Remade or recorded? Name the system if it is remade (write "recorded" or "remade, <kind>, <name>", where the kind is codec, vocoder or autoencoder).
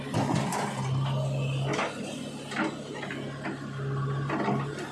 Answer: recorded